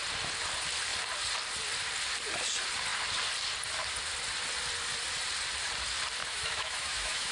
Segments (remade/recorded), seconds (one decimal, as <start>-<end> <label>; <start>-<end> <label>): 0.0-6.2 recorded; 6.2-7.3 remade